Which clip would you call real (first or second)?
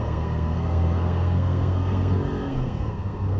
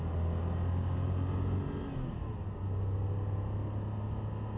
second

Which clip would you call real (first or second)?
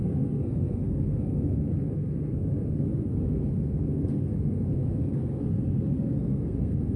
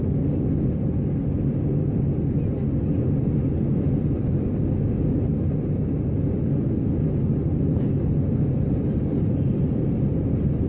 second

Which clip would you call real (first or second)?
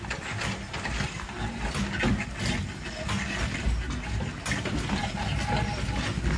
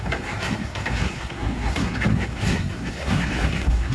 first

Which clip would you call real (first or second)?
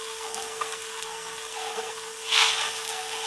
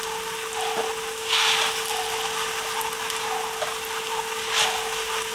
second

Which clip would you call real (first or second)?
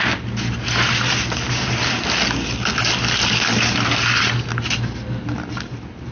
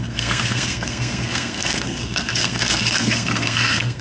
first